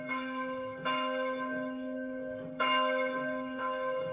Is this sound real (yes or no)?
no